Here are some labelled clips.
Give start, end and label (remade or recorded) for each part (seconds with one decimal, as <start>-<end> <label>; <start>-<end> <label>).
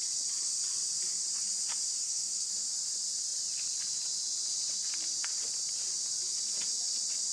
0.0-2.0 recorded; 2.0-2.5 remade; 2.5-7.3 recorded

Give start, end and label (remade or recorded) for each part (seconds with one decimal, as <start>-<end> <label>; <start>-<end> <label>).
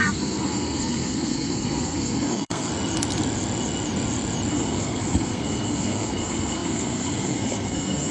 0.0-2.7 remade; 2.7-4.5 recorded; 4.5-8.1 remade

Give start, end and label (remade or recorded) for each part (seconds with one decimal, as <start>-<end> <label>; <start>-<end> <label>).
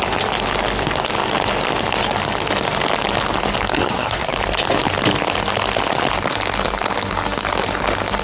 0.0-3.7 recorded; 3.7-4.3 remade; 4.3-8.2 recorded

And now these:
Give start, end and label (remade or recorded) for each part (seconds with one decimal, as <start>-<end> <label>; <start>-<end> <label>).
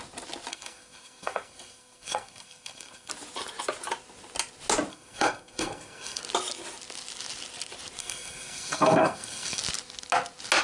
0.0-0.5 recorded; 0.5-3.1 remade; 3.1-4.9 recorded; 4.9-6.2 remade; 6.2-8.0 recorded; 8.0-9.6 remade; 9.6-10.6 recorded